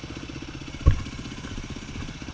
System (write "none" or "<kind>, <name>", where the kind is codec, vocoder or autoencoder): none